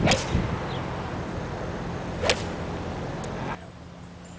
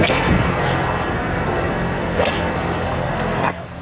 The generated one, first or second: second